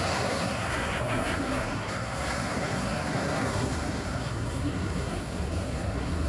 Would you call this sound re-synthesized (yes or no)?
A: yes